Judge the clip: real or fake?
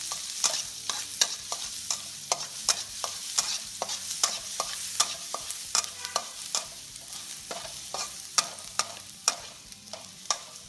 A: fake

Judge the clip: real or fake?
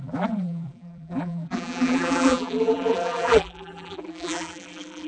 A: fake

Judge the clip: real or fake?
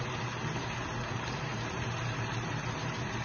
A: fake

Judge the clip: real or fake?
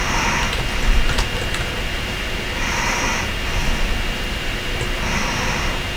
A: real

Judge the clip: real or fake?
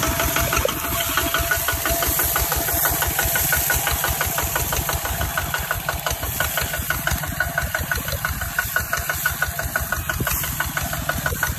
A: real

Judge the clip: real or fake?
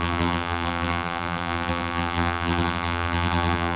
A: fake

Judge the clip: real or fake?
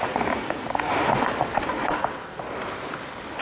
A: fake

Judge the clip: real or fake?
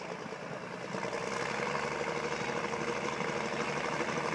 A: real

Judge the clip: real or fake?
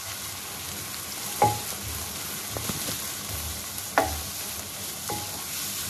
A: fake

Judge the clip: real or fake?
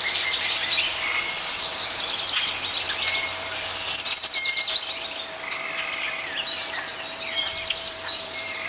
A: fake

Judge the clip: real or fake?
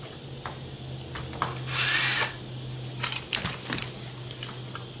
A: real